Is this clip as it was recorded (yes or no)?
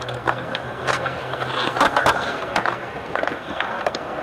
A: no